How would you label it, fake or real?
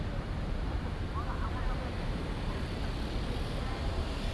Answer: real